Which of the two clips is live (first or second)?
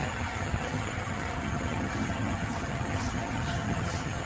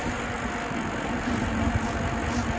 second